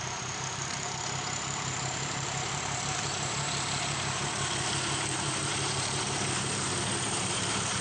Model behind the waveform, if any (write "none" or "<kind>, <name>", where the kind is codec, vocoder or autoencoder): vocoder, BigVGAN v2